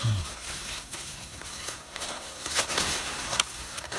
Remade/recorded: remade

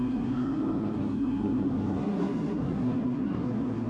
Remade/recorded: remade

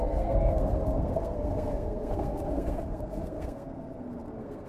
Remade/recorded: remade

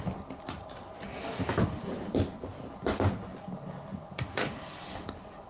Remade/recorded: recorded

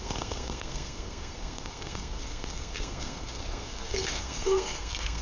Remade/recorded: remade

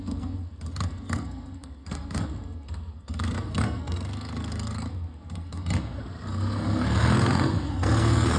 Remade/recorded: remade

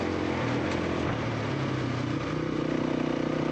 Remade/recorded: recorded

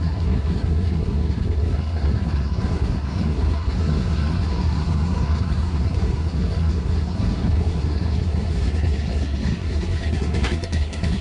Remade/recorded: remade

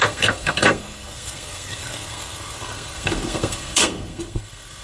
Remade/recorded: remade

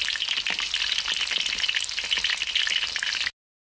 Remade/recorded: recorded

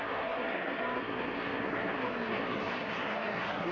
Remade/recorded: remade